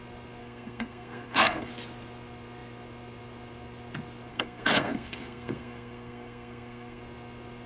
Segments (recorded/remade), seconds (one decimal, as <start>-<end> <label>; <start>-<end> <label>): 0.0-0.4 recorded; 0.4-1.7 remade; 1.7-4.3 recorded; 4.3-7.0 remade; 7.0-7.7 recorded